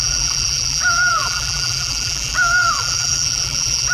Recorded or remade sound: remade